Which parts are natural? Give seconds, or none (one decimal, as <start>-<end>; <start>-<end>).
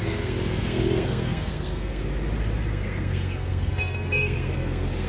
2.0-2.7